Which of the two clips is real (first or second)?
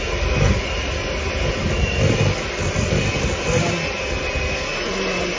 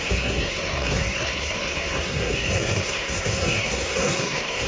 first